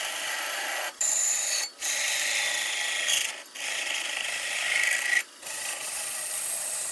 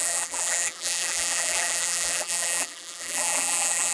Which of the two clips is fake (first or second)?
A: second